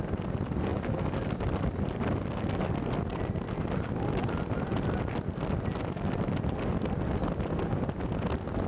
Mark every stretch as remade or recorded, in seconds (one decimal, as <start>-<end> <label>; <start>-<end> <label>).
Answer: 0.0-8.7 recorded

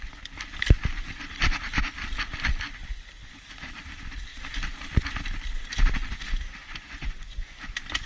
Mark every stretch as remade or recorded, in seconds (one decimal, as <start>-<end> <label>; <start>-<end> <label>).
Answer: 0.0-6.6 recorded; 6.6-7.5 remade; 7.5-8.1 recorded